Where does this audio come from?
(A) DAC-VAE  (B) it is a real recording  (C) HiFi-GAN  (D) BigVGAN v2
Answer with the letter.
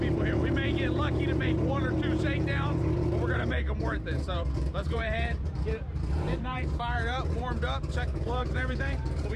D